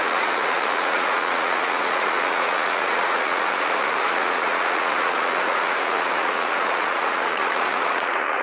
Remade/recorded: remade